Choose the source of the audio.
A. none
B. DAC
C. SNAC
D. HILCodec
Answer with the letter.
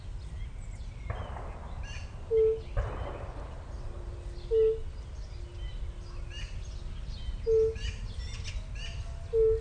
A